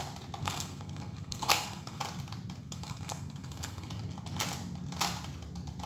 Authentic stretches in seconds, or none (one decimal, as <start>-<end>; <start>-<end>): 0.0-0.4; 2.0-2.6; 3.9-5.9